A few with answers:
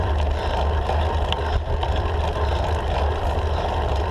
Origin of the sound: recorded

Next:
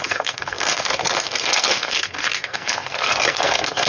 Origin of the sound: remade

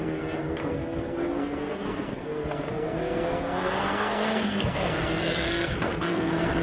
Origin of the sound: remade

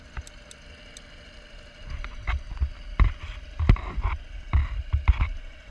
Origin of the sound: recorded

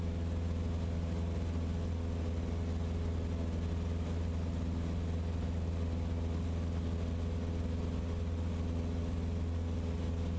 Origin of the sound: recorded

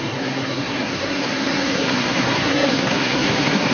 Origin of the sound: remade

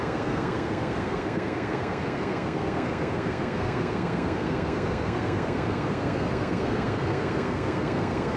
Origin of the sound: remade